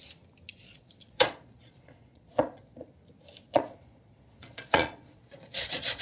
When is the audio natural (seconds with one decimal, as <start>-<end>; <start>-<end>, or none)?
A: 0.0-0.5; 2.9-3.4